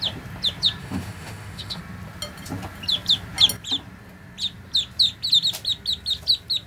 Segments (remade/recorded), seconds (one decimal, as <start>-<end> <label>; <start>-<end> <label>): 0.0-0.8 recorded; 0.8-1.8 remade; 1.8-6.7 recorded